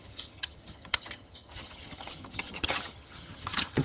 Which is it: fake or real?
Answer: fake